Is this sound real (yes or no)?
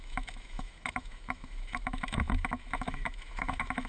no